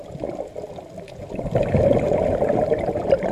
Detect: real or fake real